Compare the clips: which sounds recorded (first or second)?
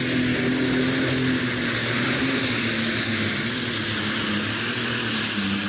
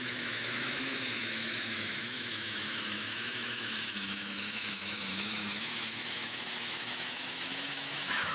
first